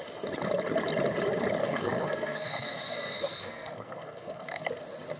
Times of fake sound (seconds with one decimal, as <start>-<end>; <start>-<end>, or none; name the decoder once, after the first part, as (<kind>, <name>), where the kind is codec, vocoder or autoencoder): 1.6-4.7 (codec, SNAC)